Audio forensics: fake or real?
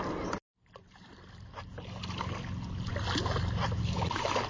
real